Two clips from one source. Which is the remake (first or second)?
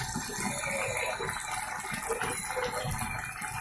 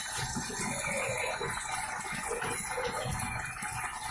second